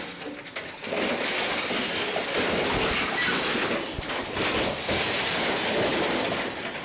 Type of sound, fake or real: real